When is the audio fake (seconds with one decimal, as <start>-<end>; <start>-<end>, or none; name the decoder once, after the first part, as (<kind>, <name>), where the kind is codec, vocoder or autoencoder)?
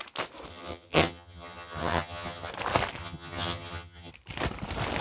0.5-2.5 (vocoder, HiFi-GAN); 3.0-4.1